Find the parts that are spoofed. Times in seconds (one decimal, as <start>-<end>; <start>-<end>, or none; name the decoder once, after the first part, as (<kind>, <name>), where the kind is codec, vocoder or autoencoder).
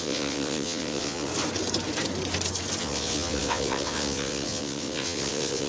0.0-1.3 (vocoder, WaveNeXt); 2.8-5.7